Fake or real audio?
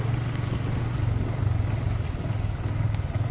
real